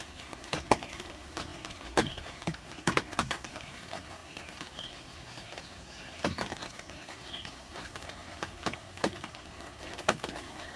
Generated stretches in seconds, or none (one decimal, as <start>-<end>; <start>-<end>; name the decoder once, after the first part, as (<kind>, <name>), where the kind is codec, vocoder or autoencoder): 0.0-10.8 (codec, SNAC)